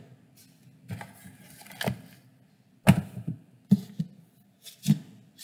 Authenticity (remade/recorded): recorded